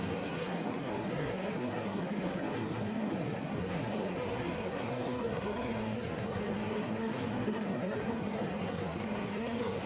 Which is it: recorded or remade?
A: remade